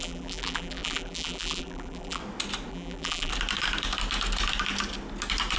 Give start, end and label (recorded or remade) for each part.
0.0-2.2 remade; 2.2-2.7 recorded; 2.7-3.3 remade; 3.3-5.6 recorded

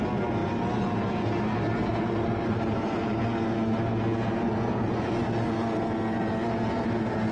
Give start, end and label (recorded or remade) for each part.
0.0-1.9 recorded; 1.9-3.2 remade; 3.2-7.3 recorded